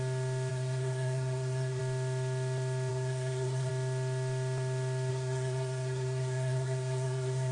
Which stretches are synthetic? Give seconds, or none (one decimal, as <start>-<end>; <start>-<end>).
0.5-1.8; 2.9-3.7; 5.1-7.5